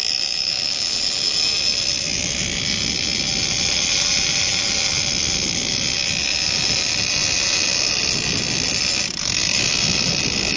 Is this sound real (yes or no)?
yes